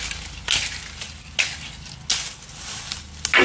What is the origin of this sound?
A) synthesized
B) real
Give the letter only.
B